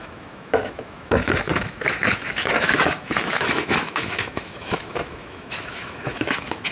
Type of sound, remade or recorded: remade